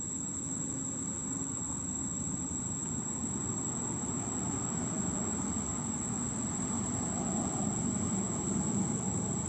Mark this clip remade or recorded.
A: recorded